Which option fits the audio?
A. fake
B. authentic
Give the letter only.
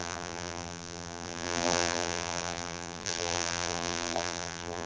A